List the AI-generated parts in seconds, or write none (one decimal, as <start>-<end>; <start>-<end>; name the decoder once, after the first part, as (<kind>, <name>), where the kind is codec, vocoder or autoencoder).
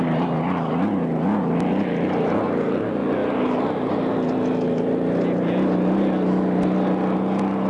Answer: none